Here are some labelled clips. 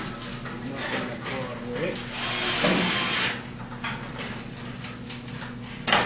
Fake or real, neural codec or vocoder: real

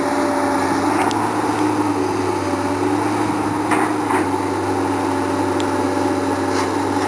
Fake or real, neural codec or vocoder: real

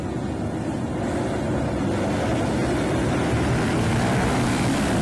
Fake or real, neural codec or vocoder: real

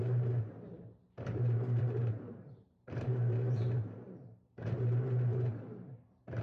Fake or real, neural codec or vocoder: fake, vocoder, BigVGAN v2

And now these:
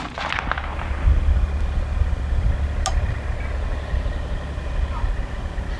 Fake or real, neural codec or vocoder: real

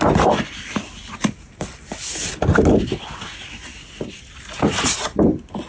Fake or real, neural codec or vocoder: real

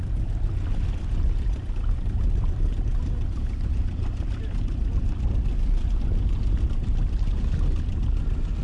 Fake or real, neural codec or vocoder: real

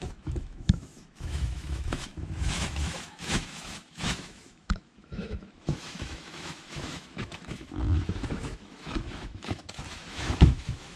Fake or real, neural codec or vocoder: fake, autoencoder, DAC-VAE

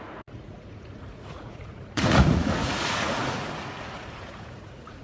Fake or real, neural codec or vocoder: fake, vocoder, Vocos